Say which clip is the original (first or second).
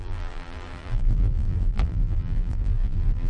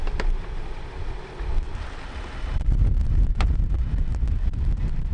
second